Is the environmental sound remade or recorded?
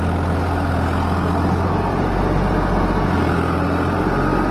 recorded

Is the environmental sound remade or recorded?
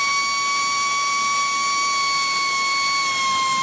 recorded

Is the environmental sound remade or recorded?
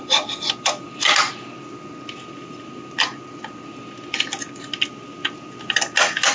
recorded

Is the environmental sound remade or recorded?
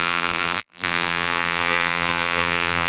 remade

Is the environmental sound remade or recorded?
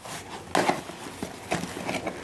recorded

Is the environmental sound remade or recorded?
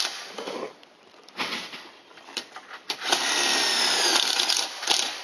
remade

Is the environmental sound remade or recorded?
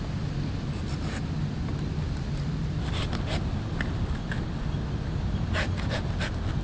recorded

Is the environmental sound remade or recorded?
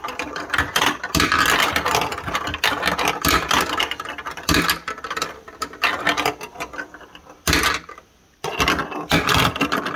recorded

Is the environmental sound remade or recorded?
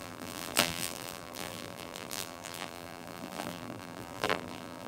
remade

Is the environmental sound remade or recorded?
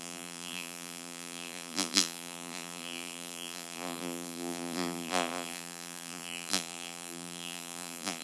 remade